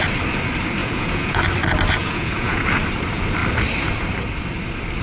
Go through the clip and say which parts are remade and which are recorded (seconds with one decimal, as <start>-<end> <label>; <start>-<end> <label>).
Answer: 0.0-0.8 recorded; 0.8-1.4 remade; 1.4-2.0 recorded; 2.0-2.6 remade; 2.6-5.0 recorded